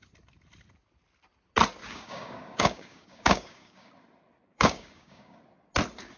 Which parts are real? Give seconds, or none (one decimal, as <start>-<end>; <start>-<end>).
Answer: 0.0-1.8; 3.9-4.5; 5.4-6.2